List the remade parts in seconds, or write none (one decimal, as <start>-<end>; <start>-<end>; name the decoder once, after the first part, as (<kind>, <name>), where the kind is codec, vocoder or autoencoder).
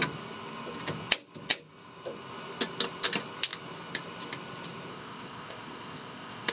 4.9-6.5 (codec, ZipCodec)